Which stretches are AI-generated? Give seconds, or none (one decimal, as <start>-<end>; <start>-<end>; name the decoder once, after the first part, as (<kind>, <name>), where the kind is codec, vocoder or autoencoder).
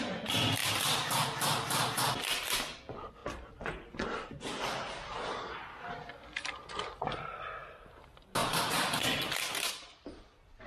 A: 0.6-2.1 (vocoder, BigVGAN v2); 8.4-9.7